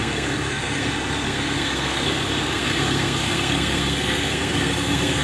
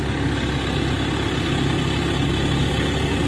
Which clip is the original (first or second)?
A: second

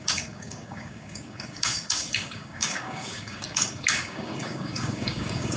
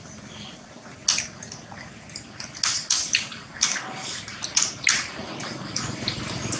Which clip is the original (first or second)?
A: second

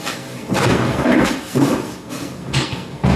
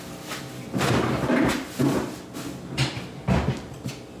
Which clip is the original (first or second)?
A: second